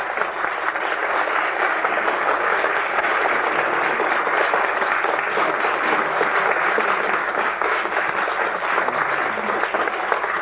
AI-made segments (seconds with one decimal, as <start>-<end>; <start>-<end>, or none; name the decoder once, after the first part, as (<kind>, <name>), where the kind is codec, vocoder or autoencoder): 1.0-3.2 (codec, DAC); 7.2-8.1